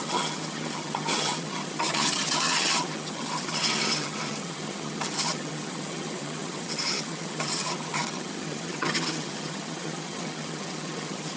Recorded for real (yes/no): no